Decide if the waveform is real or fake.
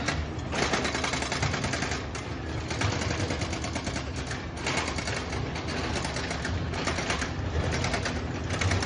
real